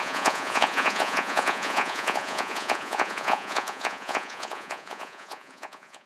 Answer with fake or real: fake